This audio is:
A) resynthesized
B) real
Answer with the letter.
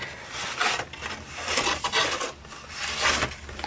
B